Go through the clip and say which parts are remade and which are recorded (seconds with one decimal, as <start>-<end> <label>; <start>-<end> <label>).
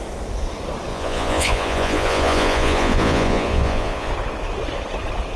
0.0-0.9 recorded; 0.9-4.1 remade; 4.1-5.4 recorded